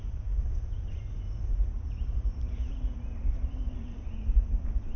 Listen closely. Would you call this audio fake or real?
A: fake